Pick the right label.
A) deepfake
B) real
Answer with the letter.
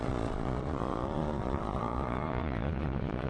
A